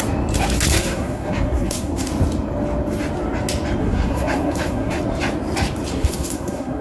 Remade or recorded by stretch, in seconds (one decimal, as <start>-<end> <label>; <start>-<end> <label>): 0.0-0.7 recorded; 0.7-2.1 remade; 2.1-3.8 recorded; 3.8-5.0 remade; 5.0-5.9 recorded; 5.9-6.8 remade